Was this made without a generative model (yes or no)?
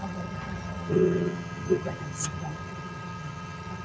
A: no